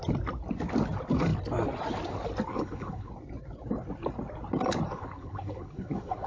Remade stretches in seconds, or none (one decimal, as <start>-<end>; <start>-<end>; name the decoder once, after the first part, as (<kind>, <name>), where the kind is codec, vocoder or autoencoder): 2.5-3.1 (codec, HILCodec); 4.9-6.3